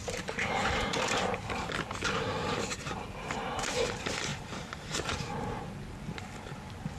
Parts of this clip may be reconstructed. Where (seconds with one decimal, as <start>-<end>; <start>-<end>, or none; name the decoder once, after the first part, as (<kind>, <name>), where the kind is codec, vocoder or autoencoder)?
0.0-1.7 (vocoder, BigVGAN v2); 2.4-3.6; 4.3-5.6